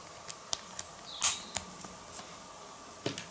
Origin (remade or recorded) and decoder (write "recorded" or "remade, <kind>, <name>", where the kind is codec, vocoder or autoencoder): recorded